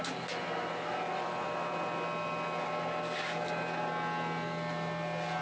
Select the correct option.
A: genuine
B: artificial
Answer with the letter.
A